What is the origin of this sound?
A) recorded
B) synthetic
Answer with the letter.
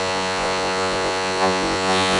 B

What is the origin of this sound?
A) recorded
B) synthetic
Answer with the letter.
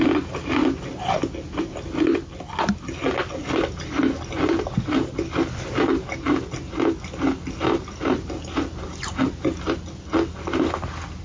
A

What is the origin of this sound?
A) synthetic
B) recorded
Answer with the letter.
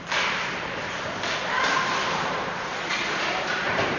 A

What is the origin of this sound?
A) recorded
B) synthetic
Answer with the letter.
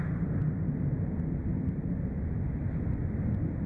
A